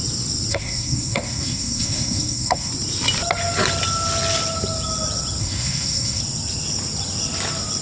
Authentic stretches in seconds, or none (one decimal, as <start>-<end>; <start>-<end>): 0.0-0.5; 2.7-5.4; 6.2-7.8